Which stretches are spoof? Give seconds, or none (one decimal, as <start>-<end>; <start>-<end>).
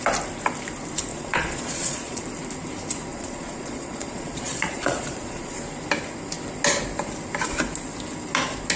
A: 1.1-2.2; 3.1-5.5